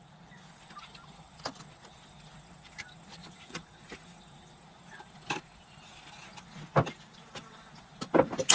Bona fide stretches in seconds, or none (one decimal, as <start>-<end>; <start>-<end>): 0.0-3.2; 4.2-8.5